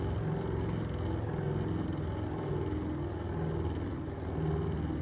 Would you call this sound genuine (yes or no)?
yes